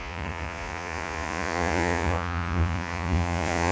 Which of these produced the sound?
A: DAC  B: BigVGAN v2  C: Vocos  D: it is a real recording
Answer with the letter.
C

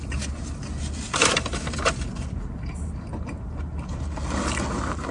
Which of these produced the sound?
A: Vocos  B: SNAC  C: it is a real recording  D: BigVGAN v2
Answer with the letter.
C